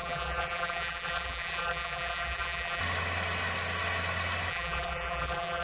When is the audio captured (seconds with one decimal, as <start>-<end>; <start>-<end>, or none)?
2.8-4.5